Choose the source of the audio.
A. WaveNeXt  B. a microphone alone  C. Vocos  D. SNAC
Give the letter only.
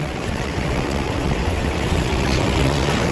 A